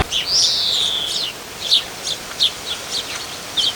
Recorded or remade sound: recorded